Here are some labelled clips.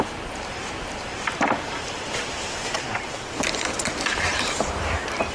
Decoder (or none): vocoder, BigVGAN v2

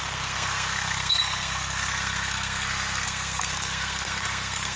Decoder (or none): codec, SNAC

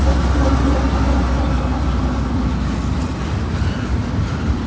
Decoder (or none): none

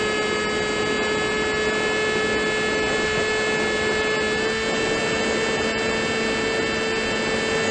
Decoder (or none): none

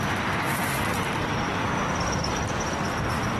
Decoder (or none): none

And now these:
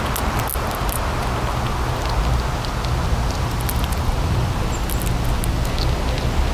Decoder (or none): none